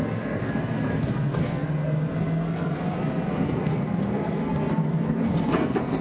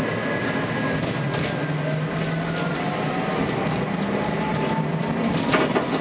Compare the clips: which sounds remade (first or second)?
first